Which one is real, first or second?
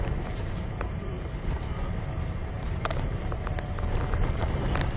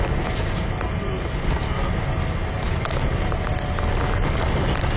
second